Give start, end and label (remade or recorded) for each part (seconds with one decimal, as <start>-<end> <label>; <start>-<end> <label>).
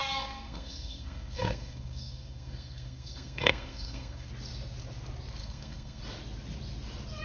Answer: 0.0-4.3 remade; 4.3-5.4 recorded; 5.4-6.0 remade; 6.0-7.2 recorded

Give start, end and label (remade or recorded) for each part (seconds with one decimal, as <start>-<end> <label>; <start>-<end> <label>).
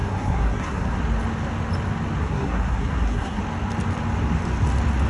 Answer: 0.0-1.0 remade; 1.0-2.2 recorded; 2.2-3.4 remade; 3.4-5.1 recorded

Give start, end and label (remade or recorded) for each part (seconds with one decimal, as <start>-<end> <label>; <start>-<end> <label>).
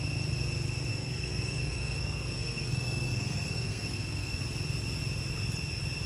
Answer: 0.0-0.9 recorded; 0.9-4.4 remade; 4.4-6.1 recorded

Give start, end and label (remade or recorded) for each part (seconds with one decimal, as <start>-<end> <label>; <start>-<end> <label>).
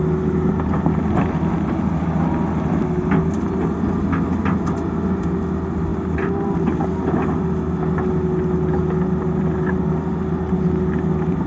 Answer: 0.0-11.5 recorded